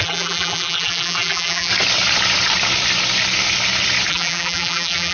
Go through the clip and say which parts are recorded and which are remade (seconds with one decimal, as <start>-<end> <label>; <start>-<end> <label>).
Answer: 0.0-1.7 remade; 1.7-4.1 recorded; 4.1-5.1 remade